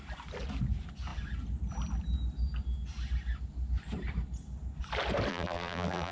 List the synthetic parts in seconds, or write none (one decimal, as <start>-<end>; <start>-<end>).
5.3-6.1

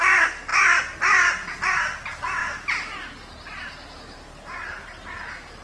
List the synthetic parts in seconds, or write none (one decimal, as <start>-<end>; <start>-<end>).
none

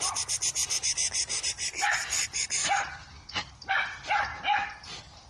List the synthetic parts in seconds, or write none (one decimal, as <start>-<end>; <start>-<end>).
0.0-0.6; 1.4-4.3

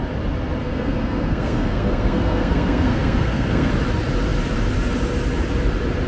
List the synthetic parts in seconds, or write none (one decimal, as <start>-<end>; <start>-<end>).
0.6-3.7

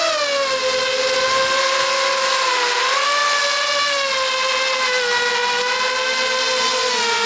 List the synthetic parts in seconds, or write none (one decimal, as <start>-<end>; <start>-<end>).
none

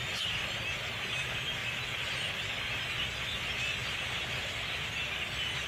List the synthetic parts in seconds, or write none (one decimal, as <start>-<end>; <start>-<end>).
3.8-4.6

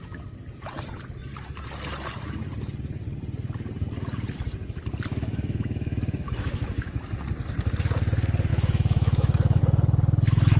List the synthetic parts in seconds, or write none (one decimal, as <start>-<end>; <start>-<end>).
5.1-7.1; 8.5-9.6

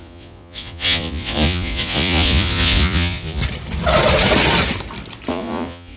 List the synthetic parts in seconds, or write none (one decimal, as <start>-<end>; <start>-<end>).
0.0-3.4; 5.3-6.0